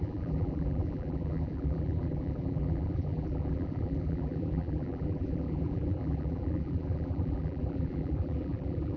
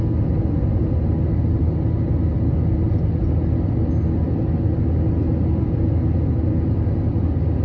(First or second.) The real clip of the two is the second